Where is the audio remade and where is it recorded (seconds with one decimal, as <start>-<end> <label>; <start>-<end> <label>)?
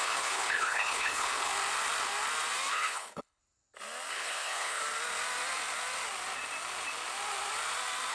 0.0-1.5 remade; 1.5-2.7 recorded; 2.7-3.4 remade; 3.4-4.1 recorded; 4.1-4.8 remade; 4.8-8.1 recorded